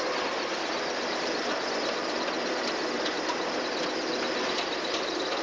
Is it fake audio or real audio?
fake